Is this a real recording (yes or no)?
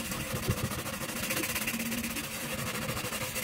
yes